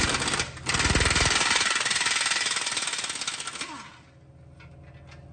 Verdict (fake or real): real